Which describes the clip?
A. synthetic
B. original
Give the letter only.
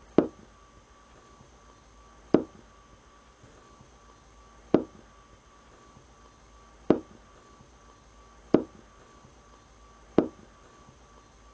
B